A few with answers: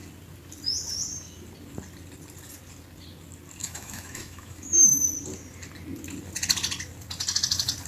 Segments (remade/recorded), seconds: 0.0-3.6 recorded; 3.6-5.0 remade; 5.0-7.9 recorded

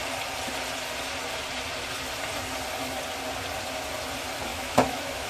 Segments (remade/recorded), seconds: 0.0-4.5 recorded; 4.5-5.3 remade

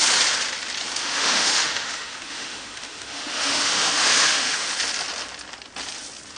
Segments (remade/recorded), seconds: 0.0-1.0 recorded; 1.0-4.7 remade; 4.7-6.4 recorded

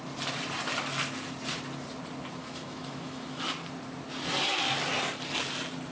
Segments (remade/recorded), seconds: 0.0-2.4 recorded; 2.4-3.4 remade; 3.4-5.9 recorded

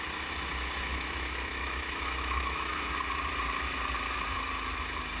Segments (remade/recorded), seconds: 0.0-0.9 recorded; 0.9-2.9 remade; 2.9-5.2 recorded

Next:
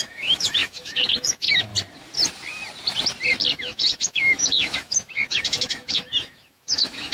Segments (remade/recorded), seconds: 0.0-1.7 remade; 1.7-3.5 recorded; 3.5-7.1 remade